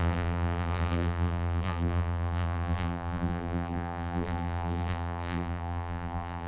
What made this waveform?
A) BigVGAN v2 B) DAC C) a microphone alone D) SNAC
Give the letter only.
A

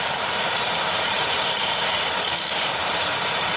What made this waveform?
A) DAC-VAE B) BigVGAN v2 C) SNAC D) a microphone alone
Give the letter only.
B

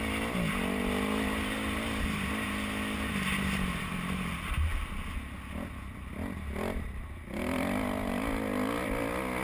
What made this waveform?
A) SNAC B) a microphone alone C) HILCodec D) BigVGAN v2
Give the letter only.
B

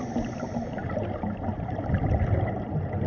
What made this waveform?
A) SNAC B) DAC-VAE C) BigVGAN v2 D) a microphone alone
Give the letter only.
C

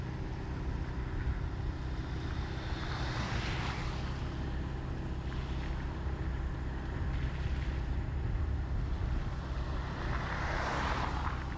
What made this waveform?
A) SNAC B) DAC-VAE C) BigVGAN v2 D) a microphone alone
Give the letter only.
D